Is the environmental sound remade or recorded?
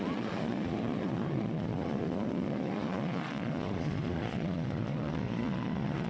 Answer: remade